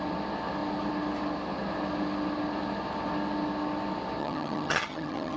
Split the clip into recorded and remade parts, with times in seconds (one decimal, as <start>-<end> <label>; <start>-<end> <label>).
0.0-4.2 recorded; 4.2-5.4 remade